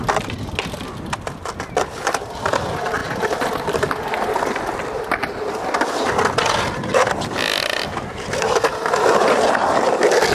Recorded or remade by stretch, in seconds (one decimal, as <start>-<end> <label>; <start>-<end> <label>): 0.0-10.3 recorded